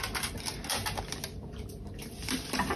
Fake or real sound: real